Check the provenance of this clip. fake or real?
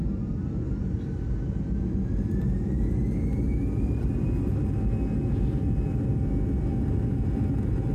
real